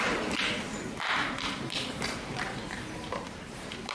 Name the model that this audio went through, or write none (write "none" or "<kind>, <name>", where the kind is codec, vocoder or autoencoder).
vocoder, BigVGAN v2